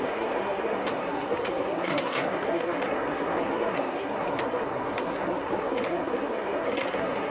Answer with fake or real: fake